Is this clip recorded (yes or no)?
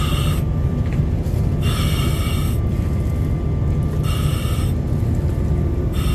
yes